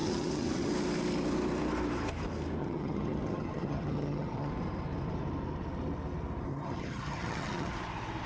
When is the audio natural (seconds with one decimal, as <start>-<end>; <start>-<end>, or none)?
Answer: 0.7-2.6; 4.5-6.5; 7.7-8.3